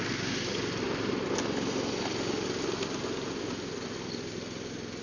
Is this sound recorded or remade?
recorded